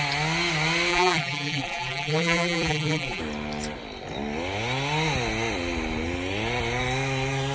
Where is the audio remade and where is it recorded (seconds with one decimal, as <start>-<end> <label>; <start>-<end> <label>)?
0.0-0.9 recorded; 0.9-3.2 remade; 3.2-7.5 recorded